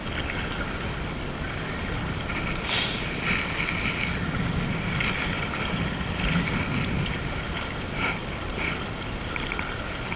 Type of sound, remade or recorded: recorded